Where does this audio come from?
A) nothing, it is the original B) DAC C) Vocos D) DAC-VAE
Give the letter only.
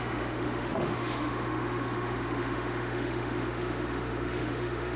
D